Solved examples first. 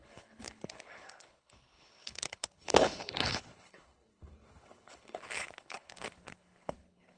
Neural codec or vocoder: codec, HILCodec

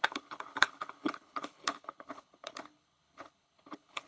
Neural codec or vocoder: codec, HILCodec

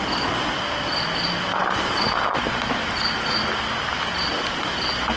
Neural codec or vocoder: none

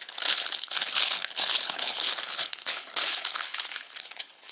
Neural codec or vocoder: codec, HILCodec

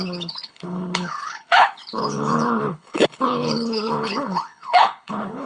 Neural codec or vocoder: codec, HILCodec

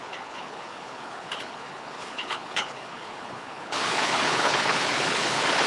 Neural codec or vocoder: codec, HILCodec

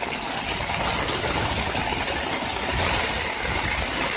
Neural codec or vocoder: none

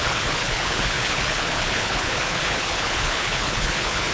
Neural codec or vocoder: codec, HILCodec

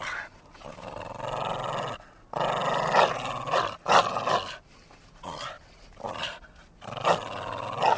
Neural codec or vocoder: none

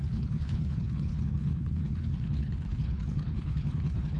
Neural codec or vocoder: codec, HILCodec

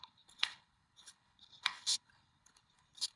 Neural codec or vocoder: codec, HILCodec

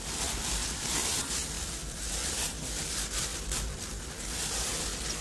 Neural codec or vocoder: none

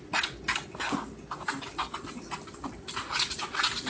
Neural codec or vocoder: none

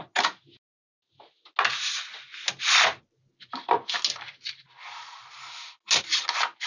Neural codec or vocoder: none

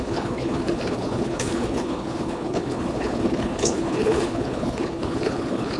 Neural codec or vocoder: codec, HILCodec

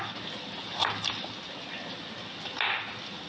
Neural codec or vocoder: none